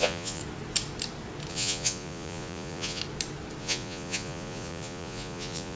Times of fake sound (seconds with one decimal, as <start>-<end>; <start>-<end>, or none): 0.0-0.4; 1.5-3.0; 3.6-5.8